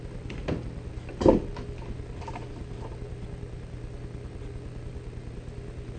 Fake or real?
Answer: real